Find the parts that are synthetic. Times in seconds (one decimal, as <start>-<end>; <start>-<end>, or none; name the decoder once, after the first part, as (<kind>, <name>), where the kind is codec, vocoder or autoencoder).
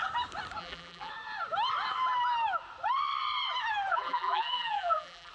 0.6-1.1 (vocoder, BigVGAN v2); 3.9-5.3